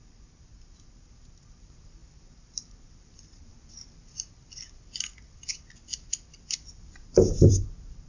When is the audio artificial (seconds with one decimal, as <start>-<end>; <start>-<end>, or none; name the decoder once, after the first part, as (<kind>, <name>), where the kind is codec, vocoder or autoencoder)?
0.0-3.5 (vocoder, BigVGAN v2); 6.4-8.1

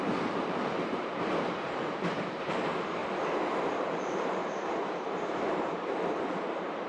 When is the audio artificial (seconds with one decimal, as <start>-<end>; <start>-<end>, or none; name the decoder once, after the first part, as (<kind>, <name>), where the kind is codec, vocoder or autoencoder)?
0.0-3.0 (vocoder, BigVGAN v2); 3.6-4.4; 5.1-6.9